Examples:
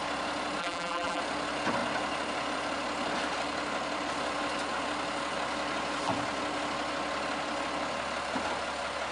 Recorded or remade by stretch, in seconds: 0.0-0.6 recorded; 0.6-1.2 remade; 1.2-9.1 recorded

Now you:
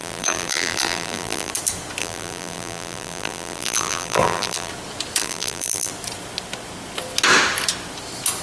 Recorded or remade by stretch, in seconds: 0.0-1.5 remade; 1.5-2.0 recorded; 2.0-4.7 remade; 4.7-5.2 recorded; 5.2-5.9 remade; 5.9-8.4 recorded

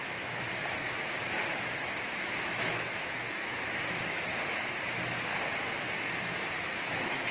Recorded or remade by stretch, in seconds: 0.0-4.3 remade; 4.3-4.8 recorded; 4.8-5.3 remade; 5.3-5.9 recorded; 5.9-7.3 remade

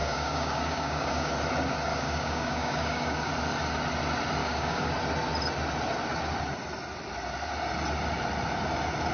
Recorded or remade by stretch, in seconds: 0.0-1.3 remade; 1.3-1.9 recorded; 1.9-3.3 remade; 3.3-4.4 recorded; 4.4-4.9 remade; 4.9-9.1 recorded

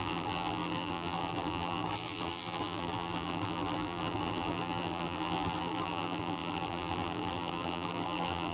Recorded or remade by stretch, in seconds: 0.0-8.5 remade